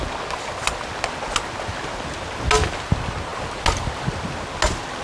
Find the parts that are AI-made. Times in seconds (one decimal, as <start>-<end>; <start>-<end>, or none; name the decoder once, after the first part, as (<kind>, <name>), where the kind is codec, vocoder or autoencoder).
none